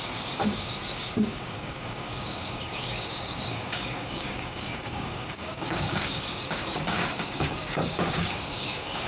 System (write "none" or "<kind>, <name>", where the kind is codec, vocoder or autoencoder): codec, DAC